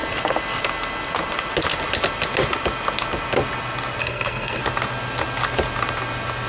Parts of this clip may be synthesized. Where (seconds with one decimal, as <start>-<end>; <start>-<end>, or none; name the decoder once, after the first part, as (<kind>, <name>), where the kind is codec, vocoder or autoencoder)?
4.0-4.6 (codec, SNAC)